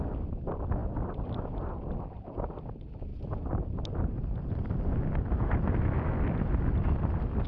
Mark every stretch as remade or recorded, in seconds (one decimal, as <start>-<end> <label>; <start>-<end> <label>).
0.0-7.5 recorded